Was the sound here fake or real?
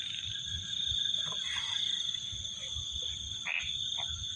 real